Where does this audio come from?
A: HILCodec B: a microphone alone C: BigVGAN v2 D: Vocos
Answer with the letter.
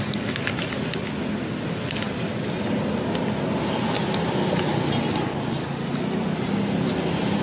B